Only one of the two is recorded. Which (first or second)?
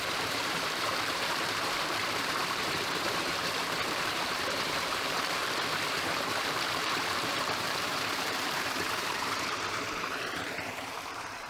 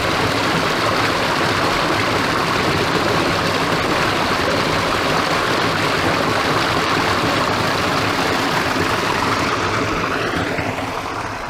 second